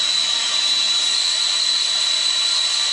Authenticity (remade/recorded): recorded